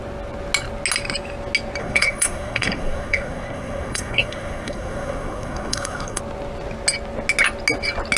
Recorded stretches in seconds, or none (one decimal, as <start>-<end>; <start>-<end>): 0.0-1.8; 6.2-8.2